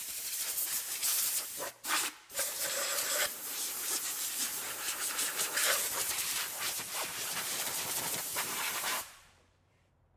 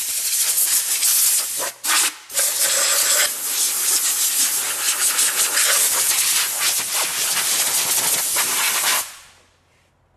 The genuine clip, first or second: second